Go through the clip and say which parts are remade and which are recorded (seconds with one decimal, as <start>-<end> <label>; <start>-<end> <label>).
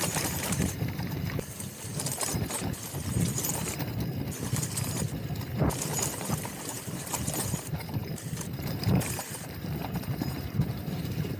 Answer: 0.0-1.9 remade; 1.9-6.3 recorded; 6.3-11.4 remade